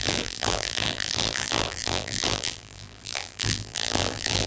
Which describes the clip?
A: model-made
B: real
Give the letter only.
A